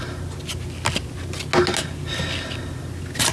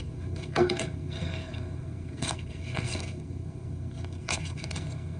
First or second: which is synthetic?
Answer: second